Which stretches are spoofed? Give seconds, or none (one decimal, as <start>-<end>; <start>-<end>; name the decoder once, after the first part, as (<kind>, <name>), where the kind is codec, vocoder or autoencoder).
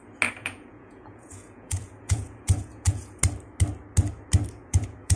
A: 0.4-3.2 (vocoder, Vocos); 4.6-5.2